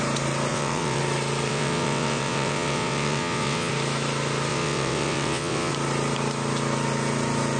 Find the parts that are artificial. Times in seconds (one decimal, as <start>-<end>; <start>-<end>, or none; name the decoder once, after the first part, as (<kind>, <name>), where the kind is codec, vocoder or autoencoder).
0.5-1.0 (vocoder, WaveNeXt); 1.5-3.7; 4.5-5.7